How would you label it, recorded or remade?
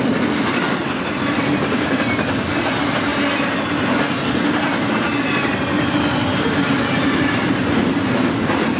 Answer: recorded